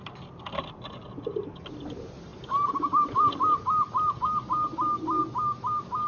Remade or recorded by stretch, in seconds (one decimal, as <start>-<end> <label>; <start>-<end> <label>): 0.0-6.1 recorded